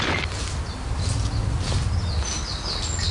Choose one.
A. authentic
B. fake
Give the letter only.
A